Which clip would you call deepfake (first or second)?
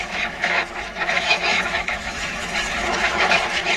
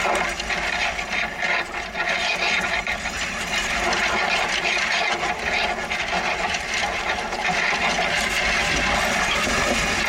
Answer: first